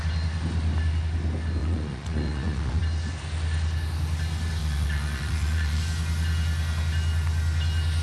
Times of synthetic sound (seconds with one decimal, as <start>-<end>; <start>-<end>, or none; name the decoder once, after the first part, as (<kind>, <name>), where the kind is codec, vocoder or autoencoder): 1.6-2.8 (vocoder, Vocos); 4.6-5.8